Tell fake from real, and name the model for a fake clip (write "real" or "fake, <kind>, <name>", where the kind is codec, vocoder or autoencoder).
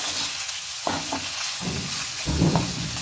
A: fake, vocoder, Vocos